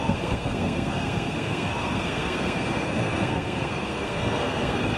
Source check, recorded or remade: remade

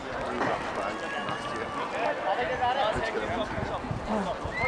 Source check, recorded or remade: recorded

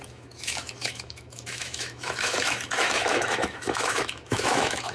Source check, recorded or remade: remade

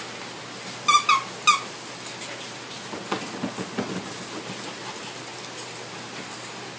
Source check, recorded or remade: recorded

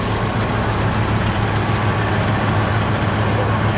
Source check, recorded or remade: recorded